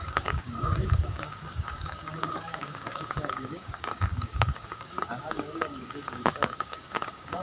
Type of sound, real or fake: fake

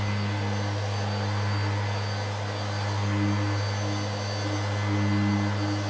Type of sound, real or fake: real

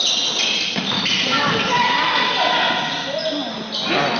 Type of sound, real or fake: real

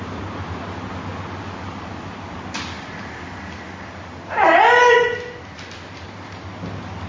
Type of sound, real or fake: real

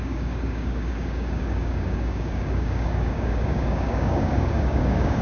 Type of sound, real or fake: fake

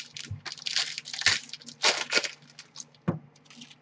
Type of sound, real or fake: real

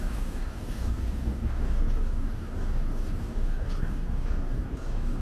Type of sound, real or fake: fake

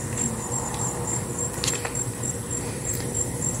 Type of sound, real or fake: real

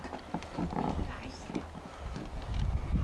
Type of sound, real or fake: real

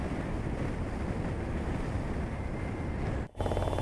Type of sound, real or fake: real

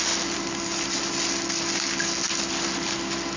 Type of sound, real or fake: real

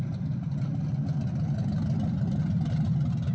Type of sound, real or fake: real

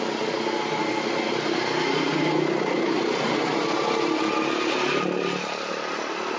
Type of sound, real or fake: real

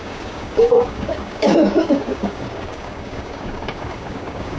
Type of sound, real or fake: fake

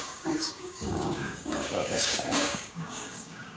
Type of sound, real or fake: fake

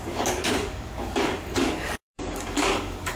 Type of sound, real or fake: fake